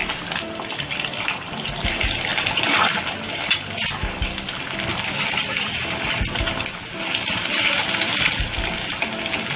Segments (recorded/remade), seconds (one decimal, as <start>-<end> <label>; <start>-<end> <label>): 0.0-2.3 recorded; 2.3-3.5 remade; 3.5-9.6 recorded